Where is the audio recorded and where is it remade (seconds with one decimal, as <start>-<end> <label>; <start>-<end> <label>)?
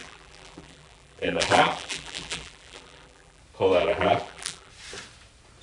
0.0-3.4 remade; 3.4-3.8 recorded; 3.8-4.7 remade; 4.7-5.6 recorded